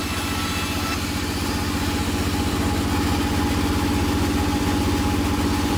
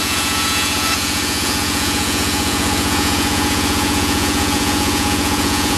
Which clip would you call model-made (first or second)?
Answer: second